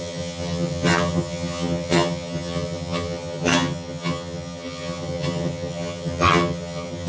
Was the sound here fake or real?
fake